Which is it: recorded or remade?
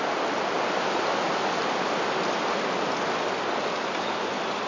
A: recorded